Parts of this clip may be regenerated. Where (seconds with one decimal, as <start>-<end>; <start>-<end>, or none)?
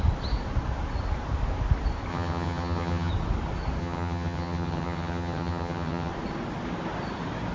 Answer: 2.1-3.1; 3.8-6.1